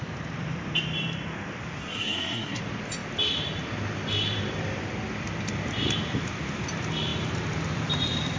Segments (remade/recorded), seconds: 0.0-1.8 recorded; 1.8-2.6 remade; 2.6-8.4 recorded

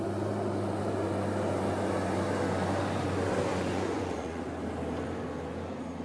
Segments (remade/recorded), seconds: 0.0-3.5 recorded; 3.5-4.4 remade; 4.4-6.0 recorded

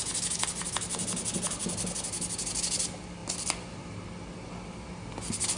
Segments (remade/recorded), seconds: 0.0-5.6 recorded

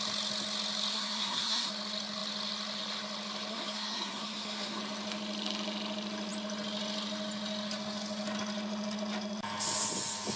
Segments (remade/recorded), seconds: 0.0-0.9 recorded; 0.9-1.7 remade; 1.7-3.5 recorded; 3.5-4.8 remade; 4.8-10.4 recorded

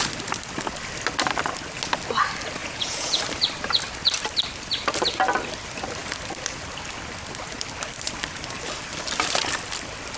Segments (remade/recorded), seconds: 0.0-2.6 recorded; 2.6-3.2 remade; 3.2-10.2 recorded

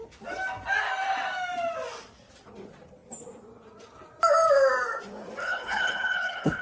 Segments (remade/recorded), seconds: 0.0-5.4 recorded; 5.4-6.6 remade

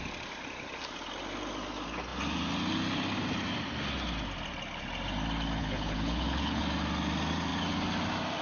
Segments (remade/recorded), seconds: 0.0-5.6 recorded; 5.6-6.6 remade; 6.6-8.4 recorded